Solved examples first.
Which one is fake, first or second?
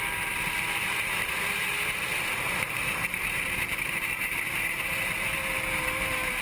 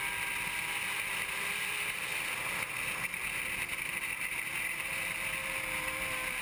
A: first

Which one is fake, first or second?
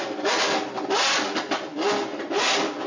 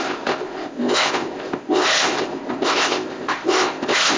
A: second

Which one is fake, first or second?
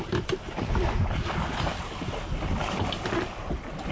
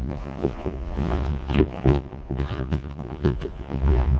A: second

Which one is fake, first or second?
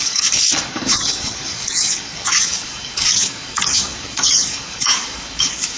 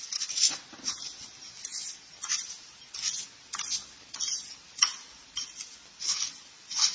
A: first